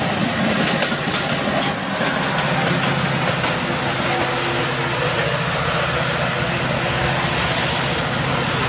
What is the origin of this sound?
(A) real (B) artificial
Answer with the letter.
A